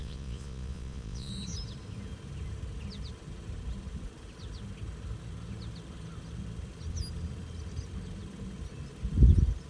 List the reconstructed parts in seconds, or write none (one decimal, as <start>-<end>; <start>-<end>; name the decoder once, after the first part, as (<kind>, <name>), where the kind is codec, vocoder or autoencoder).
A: 0.0-1.3 (vocoder, Vocos)